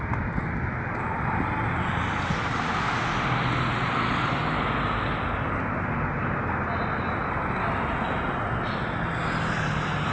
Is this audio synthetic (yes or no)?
no